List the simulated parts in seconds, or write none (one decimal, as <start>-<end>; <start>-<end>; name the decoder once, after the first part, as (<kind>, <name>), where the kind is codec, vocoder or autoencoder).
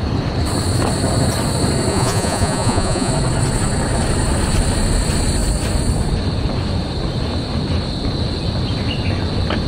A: 1.9-3.1 (vocoder, Vocos)